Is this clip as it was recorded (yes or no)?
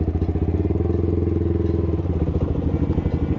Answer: yes